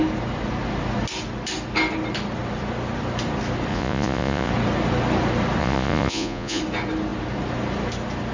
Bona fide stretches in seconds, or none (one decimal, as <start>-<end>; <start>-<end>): 0.0-3.7; 4.5-5.6; 6.6-8.3